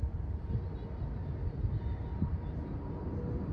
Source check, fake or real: real